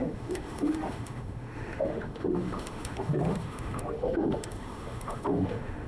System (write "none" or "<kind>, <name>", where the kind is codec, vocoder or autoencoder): autoencoder, DAC-VAE